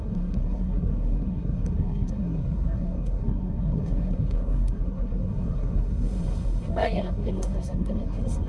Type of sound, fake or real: fake